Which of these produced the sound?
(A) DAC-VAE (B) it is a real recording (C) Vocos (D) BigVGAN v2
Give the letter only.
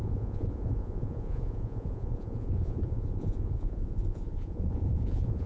C